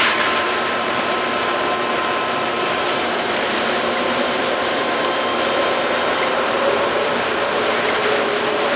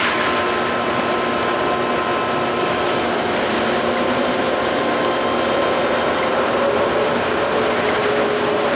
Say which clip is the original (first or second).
second